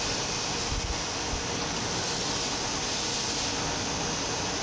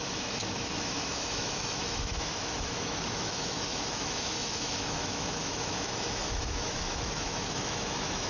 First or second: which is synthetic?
second